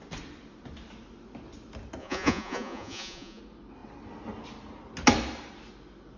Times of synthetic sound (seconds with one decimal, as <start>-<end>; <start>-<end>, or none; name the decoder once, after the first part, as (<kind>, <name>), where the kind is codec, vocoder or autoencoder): 2.0-3.4 (vocoder, Vocos)